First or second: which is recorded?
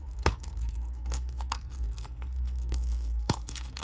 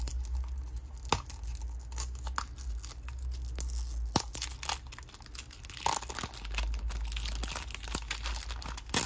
second